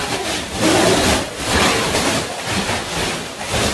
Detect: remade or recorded recorded